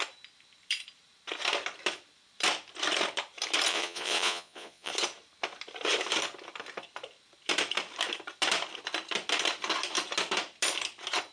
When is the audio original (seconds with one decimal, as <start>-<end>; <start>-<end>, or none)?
0.0-3.7; 4.9-11.3